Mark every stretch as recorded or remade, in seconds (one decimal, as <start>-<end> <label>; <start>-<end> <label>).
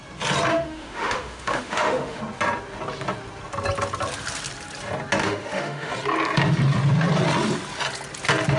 0.0-0.5 recorded; 0.5-2.2 remade; 2.2-5.2 recorded; 5.2-5.9 remade; 5.9-8.6 recorded